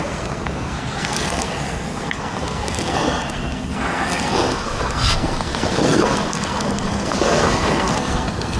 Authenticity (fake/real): fake